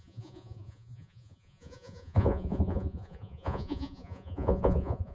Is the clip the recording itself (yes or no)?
no